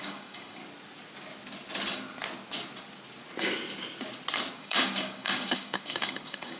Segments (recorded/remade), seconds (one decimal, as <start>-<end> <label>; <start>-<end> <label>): 0.0-0.6 remade; 0.6-4.6 recorded; 4.6-6.6 remade